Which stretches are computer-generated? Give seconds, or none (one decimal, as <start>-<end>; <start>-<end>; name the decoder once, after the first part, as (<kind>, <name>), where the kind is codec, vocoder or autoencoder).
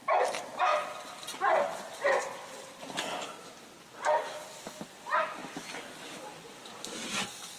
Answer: 5.4-6.1 (vocoder, BigVGAN v2)